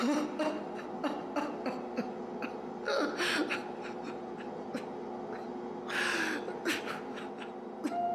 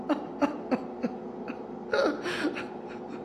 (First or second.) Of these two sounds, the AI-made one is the second